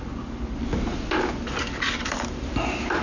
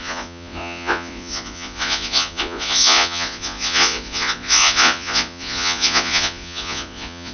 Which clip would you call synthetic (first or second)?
second